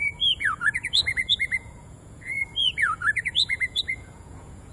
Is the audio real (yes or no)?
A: no